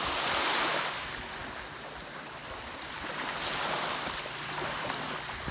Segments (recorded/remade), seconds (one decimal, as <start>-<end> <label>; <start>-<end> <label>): 0.0-5.5 recorded